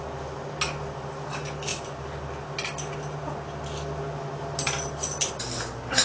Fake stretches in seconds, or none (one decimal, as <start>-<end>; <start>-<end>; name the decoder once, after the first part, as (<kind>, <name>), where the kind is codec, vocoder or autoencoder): none